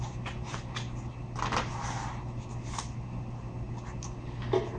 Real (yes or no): yes